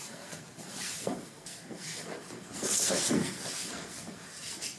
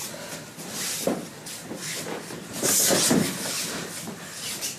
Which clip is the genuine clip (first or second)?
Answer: second